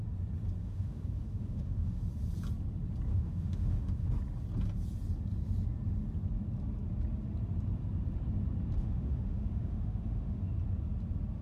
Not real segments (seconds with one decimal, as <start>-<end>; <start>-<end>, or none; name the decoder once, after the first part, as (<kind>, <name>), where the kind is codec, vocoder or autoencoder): 0.6-2.0 (autoencoder, DAC-VAE); 3.1-4.1; 8.8-10.4